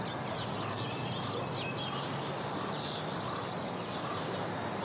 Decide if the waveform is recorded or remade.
recorded